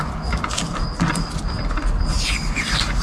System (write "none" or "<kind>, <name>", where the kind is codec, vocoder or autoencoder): none